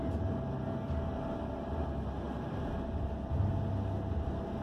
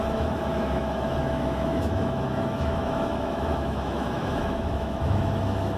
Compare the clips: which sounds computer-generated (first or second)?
second